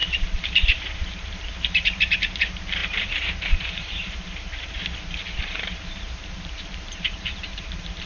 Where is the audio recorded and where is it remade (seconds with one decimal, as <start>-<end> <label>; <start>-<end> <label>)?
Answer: 0.0-8.1 remade